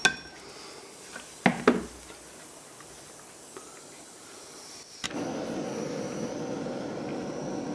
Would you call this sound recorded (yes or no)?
yes